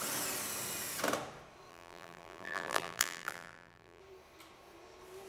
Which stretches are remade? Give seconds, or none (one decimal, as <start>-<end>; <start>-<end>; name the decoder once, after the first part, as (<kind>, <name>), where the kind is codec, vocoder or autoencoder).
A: 1.7-4.0 (vocoder, BigVGAN v2)